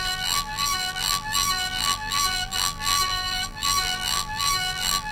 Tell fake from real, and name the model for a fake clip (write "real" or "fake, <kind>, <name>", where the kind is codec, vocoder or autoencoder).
fake, vocoder, BigVGAN v2